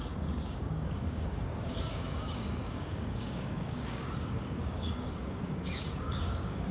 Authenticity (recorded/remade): remade